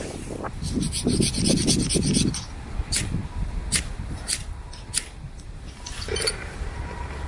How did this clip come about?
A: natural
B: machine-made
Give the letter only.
A